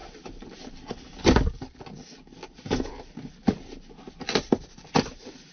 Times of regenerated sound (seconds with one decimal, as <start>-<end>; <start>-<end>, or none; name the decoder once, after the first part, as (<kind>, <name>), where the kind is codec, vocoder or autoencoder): none